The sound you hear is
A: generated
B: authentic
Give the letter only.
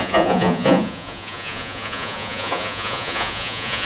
A